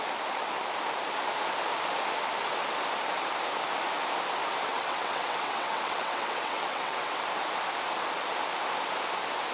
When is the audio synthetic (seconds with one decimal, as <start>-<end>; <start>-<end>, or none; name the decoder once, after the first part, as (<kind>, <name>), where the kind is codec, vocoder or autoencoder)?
4.7-7.2 (vocoder, WaveNeXt)